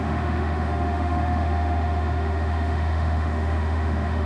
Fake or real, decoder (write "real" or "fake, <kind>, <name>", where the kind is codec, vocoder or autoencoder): fake, autoencoder, DAC-VAE